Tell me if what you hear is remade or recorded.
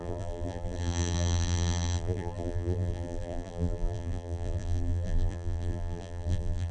remade